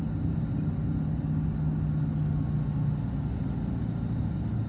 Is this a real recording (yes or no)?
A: yes